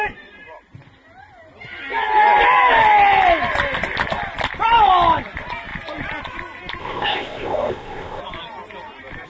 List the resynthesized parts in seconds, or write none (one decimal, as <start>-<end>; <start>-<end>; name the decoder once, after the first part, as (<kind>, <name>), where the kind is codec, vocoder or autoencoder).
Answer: 6.8-8.2 (codec, ZipCodec)